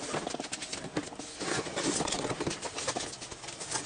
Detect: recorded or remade recorded